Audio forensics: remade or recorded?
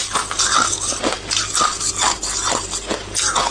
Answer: recorded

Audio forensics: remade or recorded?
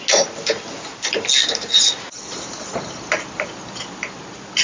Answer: recorded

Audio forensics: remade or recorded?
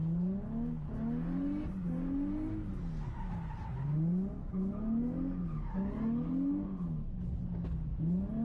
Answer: recorded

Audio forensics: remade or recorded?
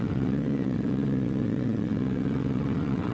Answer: remade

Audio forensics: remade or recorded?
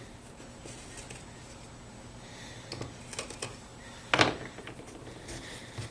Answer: recorded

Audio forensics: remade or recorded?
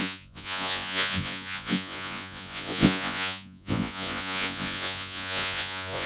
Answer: remade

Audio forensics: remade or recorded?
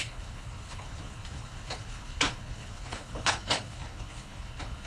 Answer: remade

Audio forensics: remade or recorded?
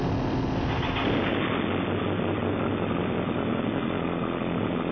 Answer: recorded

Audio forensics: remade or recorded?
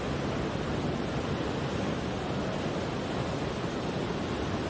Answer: recorded